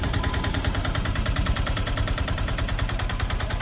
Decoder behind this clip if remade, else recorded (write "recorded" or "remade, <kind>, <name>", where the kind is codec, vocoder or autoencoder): remade, vocoder, BigVGAN v2